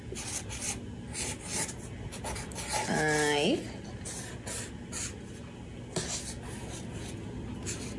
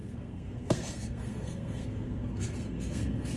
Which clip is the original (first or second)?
first